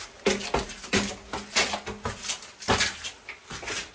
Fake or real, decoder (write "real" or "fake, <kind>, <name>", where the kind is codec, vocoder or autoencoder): real